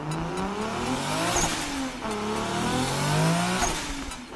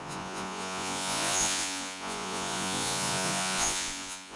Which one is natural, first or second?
first